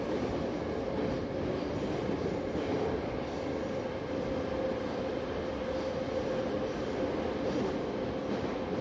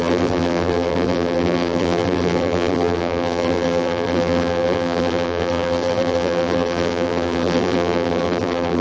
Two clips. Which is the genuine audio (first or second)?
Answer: first